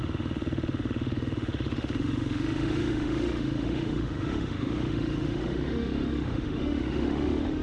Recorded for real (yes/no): no